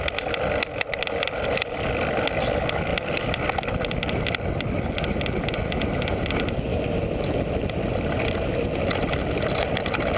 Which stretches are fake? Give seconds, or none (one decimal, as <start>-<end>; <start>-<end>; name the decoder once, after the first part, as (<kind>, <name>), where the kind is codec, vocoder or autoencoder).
none